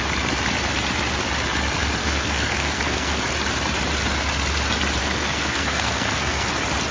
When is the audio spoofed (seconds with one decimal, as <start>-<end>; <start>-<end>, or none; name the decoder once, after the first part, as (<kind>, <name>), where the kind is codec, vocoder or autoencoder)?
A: 2.0-3.2 (codec, SNAC); 5.0-6.5